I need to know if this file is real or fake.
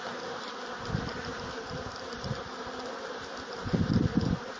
real